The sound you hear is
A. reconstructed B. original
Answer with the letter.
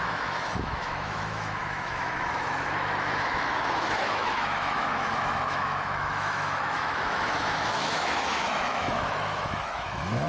A